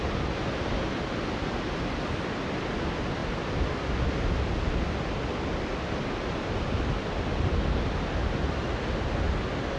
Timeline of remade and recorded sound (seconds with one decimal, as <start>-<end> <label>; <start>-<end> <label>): 0.0-9.8 recorded